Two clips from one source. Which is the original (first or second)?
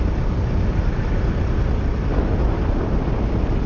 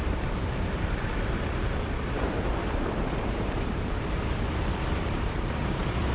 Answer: first